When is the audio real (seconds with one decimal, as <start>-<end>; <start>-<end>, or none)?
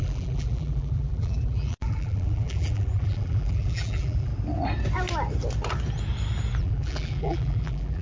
4.3-6.6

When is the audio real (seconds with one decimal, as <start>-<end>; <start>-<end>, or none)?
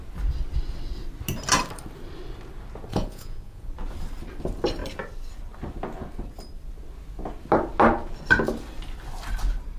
0.0-2.9; 3.7-9.8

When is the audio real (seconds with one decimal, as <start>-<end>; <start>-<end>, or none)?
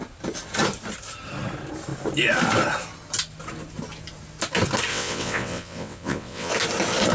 0.0-4.9; 6.5-7.1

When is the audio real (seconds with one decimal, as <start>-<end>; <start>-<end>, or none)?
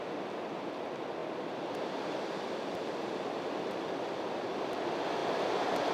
none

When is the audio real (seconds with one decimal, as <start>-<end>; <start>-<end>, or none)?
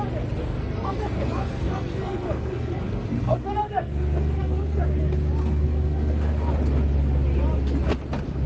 0.0-0.4; 4.8-5.4; 6.5-8.5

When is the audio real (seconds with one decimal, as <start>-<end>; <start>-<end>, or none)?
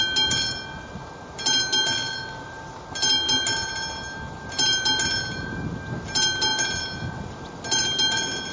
0.0-8.5